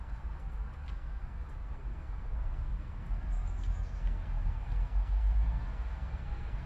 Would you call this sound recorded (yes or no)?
no